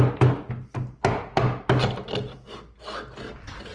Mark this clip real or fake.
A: real